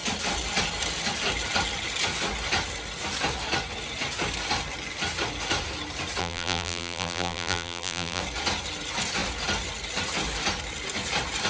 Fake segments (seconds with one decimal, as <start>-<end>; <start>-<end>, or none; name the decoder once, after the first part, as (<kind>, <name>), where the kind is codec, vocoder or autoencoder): 6.2-8.2 (vocoder, BigVGAN v2)